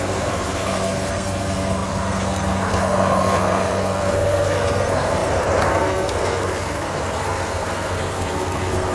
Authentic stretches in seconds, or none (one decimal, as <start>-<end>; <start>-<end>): none